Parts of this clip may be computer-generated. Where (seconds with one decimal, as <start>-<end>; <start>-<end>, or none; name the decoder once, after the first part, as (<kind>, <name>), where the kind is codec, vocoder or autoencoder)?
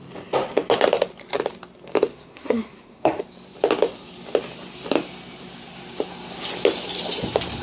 2.1-3.2 (codec, SNAC)